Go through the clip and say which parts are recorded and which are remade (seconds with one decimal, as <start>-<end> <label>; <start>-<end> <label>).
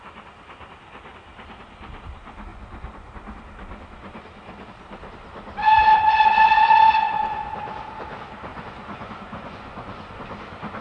0.0-2.5 recorded; 2.5-3.1 remade; 3.1-5.6 recorded; 5.6-6.8 remade; 6.8-8.5 recorded; 8.5-10.2 remade; 10.2-10.8 recorded